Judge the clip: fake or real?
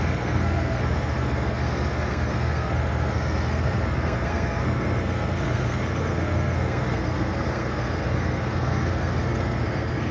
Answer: fake